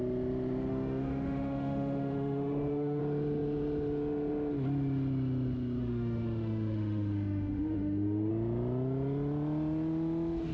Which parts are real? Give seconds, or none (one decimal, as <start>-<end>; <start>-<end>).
0.0-0.7; 3.0-5.8; 8.3-10.5